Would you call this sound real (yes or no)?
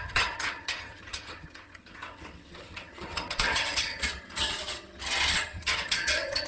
no